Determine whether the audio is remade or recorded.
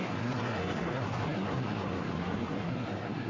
remade